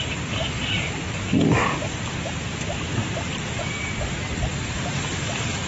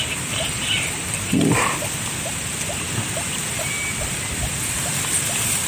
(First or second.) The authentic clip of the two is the second